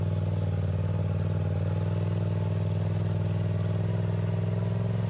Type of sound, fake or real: real